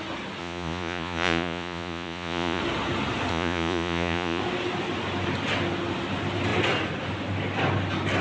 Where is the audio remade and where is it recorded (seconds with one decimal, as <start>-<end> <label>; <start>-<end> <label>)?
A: 0.0-0.4 recorded; 0.4-2.6 remade; 2.6-3.3 recorded; 3.3-4.4 remade; 4.4-8.2 recorded